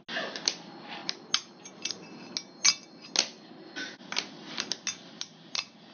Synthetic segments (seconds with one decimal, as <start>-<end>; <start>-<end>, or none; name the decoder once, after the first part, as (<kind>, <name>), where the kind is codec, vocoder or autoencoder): none